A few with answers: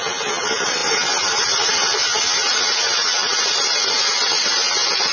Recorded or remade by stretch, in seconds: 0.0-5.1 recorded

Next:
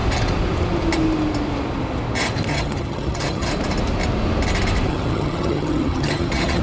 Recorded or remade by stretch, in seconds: 0.0-2.5 recorded; 2.5-3.5 remade; 3.5-4.9 recorded; 4.9-6.6 remade

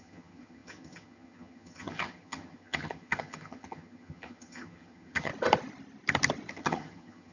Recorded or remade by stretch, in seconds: 0.0-5.3 remade; 5.3-6.5 recorded; 6.5-7.3 remade

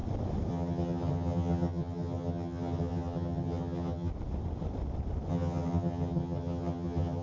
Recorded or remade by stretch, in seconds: 0.0-0.5 recorded; 0.5-4.1 remade; 4.1-5.3 recorded; 5.3-7.2 remade

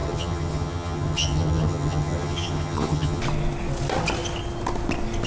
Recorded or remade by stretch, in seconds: 0.0-3.2 remade; 3.2-5.3 recorded

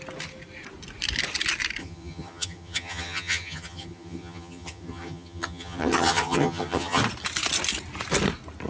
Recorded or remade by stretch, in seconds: 0.0-1.8 recorded; 1.8-7.0 remade; 7.0-8.7 recorded

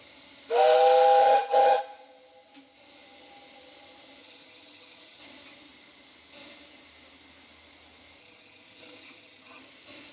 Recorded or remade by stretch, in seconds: 0.0-1.2 recorded; 1.2-1.8 remade; 1.8-4.2 recorded; 4.2-5.2 remade; 5.2-8.2 recorded; 8.2-9.6 remade; 9.6-10.1 recorded

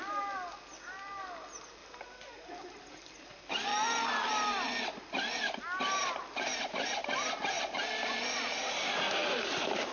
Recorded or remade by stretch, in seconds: 0.0-9.9 recorded